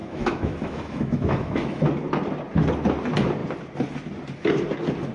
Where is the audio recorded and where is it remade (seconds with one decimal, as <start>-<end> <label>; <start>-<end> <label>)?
0.0-1.8 remade; 1.8-5.1 recorded